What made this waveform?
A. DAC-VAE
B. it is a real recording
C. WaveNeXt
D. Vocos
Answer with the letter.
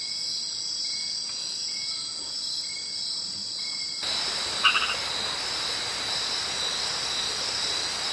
B